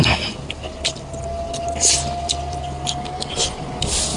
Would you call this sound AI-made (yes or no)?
no